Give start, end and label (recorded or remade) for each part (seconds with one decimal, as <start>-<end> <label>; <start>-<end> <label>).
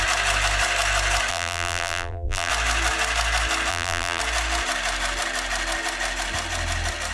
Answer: 0.0-1.3 recorded; 1.3-2.5 remade; 2.5-3.7 recorded; 3.7-4.2 remade; 4.2-7.1 recorded